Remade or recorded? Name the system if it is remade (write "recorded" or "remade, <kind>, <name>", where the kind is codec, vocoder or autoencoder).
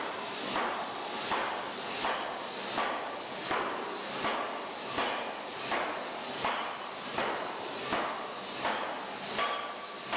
recorded